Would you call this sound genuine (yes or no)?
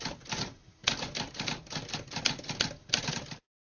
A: yes